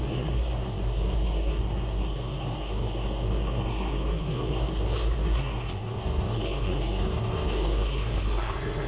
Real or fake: fake